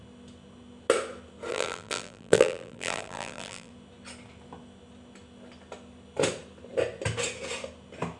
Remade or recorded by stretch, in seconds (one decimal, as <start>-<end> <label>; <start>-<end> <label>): 0.0-1.5 recorded; 1.5-3.7 remade; 3.7-8.2 recorded